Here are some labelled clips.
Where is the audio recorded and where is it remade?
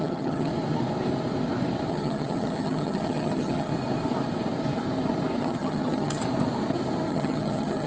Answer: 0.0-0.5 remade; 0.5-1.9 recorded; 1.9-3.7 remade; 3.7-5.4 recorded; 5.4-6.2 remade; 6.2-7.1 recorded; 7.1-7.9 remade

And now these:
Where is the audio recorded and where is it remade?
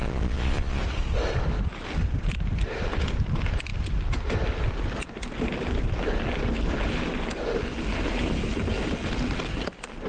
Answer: 0.0-0.8 remade; 0.8-10.1 recorded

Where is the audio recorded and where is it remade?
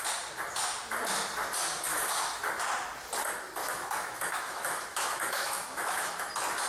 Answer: 0.0-1.9 recorded; 1.9-2.5 remade; 2.5-3.6 recorded; 3.6-6.3 remade; 6.3-6.7 recorded